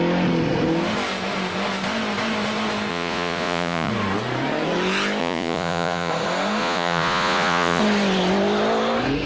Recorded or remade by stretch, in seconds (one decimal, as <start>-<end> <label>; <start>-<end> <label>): 0.0-2.9 recorded; 2.9-3.9 remade; 3.9-5.2 recorded; 5.2-6.1 remade; 6.1-6.6 recorded; 6.6-7.8 remade; 7.8-9.3 recorded